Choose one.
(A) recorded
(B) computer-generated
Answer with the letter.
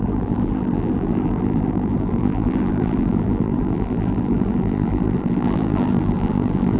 B